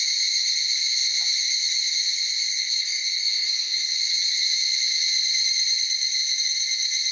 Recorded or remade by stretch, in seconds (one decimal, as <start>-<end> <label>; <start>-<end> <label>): 0.0-2.5 recorded; 2.5-4.0 remade; 4.0-7.1 recorded